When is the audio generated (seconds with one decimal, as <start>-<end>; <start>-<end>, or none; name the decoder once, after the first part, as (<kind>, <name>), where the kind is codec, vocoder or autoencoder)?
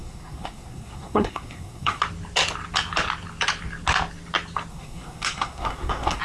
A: 0.0-2.0 (codec, SNAC); 4.7-6.2